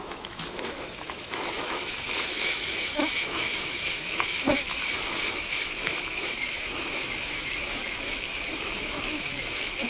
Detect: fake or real fake